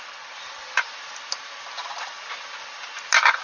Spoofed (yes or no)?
no